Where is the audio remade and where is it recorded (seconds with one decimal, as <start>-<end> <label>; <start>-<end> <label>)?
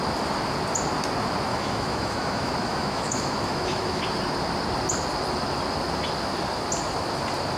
0.0-1.5 recorded; 1.5-4.0 remade; 4.0-7.6 recorded